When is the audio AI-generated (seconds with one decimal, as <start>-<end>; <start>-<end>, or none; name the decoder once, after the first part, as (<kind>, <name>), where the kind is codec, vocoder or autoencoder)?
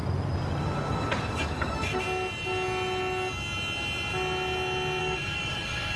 1.3-1.9 (codec, DAC); 5.0-6.0